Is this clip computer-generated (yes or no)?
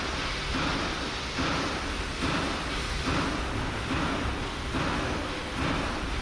no